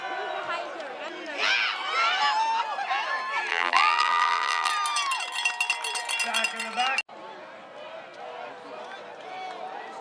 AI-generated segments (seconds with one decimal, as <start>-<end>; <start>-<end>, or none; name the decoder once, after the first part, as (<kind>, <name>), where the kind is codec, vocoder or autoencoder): 3.5-4.7 (vocoder, BigVGAN v2)